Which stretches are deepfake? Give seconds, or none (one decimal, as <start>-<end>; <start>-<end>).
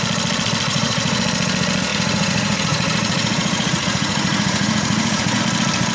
0.7-1.2; 1.9-5.4